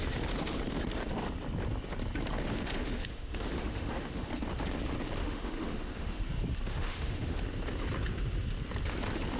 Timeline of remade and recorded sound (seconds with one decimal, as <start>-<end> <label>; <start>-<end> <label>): 0.0-2.5 recorded; 2.5-4.3 remade; 4.3-5.2 recorded; 5.2-6.2 remade; 6.2-6.7 recorded; 6.7-7.4 remade; 7.4-9.4 recorded